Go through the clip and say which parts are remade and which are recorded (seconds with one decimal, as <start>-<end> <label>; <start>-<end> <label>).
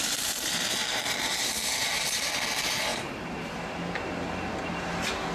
0.0-5.3 recorded